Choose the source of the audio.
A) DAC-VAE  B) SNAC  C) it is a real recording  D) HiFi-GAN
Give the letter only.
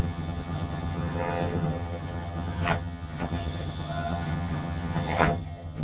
D